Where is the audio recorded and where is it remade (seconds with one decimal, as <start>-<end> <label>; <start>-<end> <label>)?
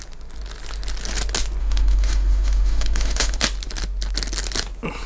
0.0-1.6 recorded; 1.6-3.4 remade; 3.4-5.1 recorded